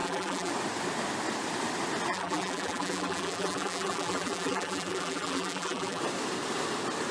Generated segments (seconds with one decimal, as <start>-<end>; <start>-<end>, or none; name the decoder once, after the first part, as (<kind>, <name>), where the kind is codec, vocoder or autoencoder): 0.0-0.5 (vocoder, BigVGAN v2); 2.1-6.0